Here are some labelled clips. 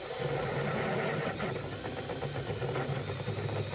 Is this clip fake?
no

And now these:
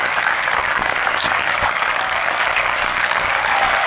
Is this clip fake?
yes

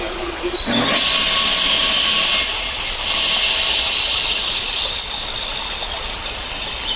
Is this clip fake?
no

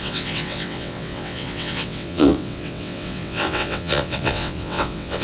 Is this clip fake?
yes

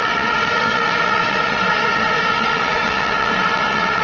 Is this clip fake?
yes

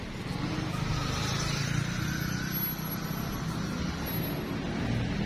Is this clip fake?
no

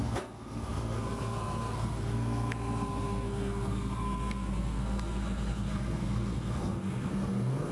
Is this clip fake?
yes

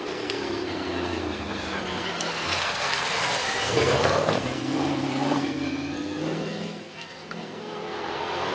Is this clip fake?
yes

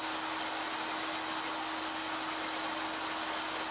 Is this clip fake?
no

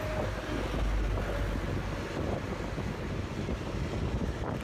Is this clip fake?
no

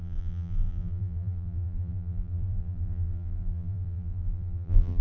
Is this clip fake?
yes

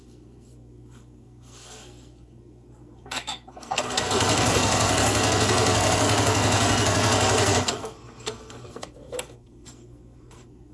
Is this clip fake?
yes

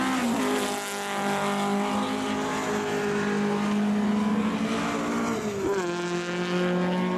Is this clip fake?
no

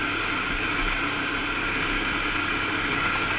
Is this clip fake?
no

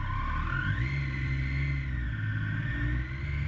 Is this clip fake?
no